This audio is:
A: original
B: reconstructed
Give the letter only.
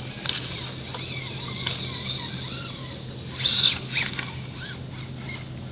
A